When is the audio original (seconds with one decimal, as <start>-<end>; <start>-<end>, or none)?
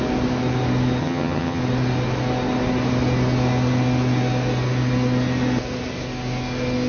0.0-1.0; 1.6-6.9